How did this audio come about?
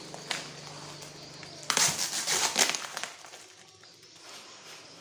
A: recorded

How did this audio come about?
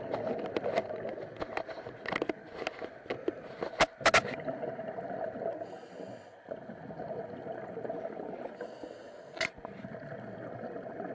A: recorded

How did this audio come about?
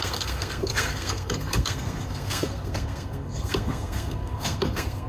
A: remade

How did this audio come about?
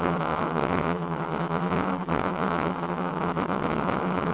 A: remade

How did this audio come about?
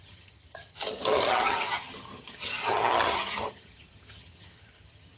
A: remade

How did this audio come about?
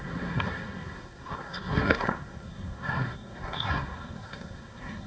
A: remade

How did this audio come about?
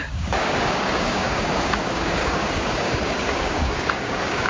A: remade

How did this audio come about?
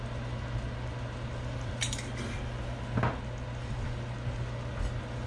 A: recorded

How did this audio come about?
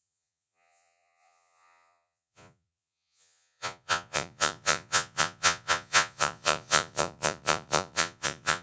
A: remade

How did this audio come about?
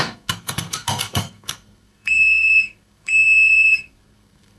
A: remade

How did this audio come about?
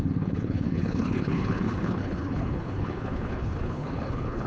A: remade